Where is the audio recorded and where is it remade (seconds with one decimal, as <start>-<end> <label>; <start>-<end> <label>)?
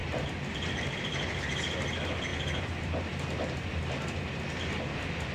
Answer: 0.0-0.7 remade; 0.7-2.3 recorded; 2.3-4.2 remade; 4.2-5.3 recorded